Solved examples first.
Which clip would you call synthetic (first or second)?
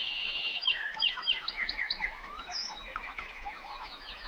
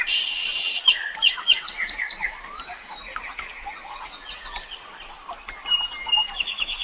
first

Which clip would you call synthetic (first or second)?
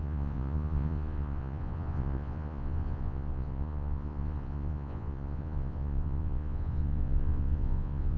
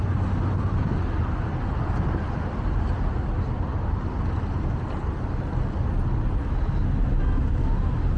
first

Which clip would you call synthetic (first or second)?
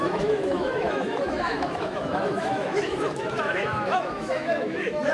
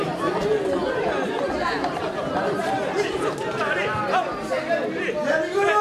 first